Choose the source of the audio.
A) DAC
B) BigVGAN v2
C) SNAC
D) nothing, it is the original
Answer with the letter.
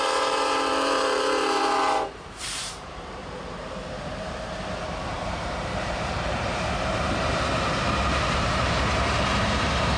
B